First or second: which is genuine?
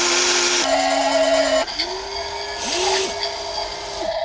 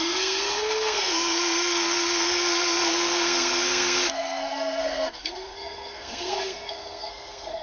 first